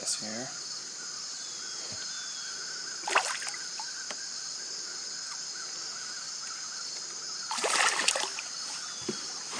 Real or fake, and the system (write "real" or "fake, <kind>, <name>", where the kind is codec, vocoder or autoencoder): real